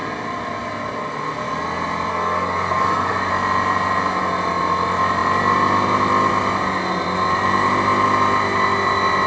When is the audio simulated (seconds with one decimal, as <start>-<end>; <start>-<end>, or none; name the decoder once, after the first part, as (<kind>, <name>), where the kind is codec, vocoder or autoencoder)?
2.1-3.3 (codec, SNAC)